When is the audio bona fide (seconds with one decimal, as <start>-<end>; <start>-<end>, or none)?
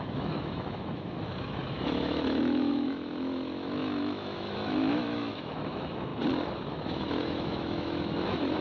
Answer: 6.1-6.7